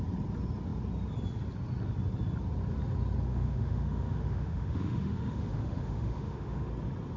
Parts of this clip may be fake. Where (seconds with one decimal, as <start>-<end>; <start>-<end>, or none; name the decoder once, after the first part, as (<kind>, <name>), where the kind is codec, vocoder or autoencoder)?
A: 3.3-6.7 (autoencoder, DAC-VAE)